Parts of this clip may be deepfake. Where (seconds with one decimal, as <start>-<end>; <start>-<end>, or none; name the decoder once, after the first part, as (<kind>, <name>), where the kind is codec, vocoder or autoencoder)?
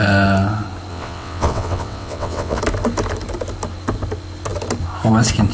0.9-2.6 (vocoder, WaveNeXt)